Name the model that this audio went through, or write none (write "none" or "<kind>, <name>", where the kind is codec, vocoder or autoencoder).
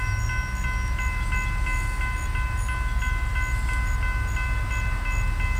none